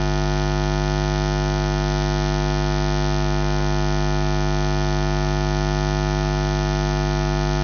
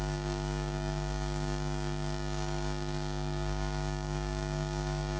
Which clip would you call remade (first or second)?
second